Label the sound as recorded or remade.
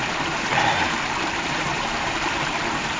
remade